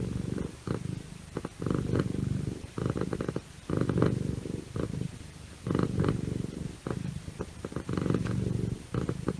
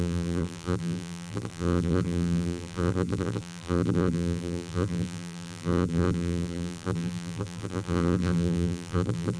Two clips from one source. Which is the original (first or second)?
first